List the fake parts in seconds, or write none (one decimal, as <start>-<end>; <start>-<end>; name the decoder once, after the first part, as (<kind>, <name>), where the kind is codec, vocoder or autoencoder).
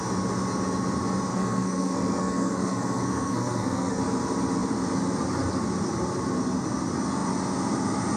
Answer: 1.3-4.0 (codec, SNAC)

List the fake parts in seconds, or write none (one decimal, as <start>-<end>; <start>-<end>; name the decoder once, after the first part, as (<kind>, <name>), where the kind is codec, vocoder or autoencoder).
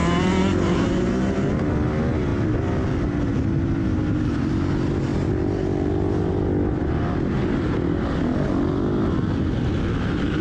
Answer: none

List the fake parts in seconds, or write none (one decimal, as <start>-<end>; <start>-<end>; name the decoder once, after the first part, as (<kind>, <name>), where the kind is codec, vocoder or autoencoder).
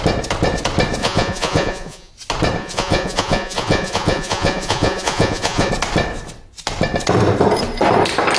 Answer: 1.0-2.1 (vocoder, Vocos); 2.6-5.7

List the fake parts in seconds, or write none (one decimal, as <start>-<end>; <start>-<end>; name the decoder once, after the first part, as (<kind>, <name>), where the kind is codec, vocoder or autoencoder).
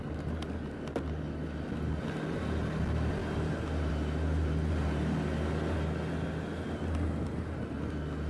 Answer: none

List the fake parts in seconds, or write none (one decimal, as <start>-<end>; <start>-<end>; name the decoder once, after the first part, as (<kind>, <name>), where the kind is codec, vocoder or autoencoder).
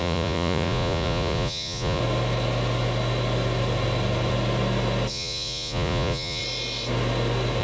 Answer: 0.0-2.0 (vocoder, Vocos); 5.1-6.4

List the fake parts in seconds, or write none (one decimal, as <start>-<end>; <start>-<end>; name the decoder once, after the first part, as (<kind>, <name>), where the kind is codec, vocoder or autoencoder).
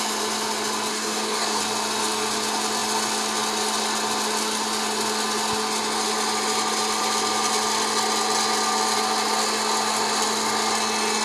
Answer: 0.9-1.6 (codec, DAC)